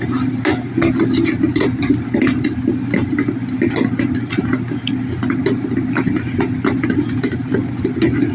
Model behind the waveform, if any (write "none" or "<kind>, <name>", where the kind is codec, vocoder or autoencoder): none